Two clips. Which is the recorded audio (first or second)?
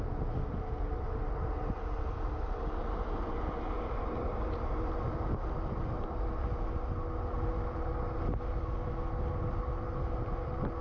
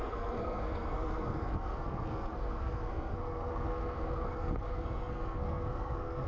first